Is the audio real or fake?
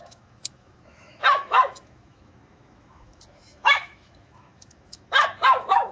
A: fake